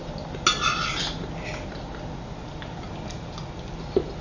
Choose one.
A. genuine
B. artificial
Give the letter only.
A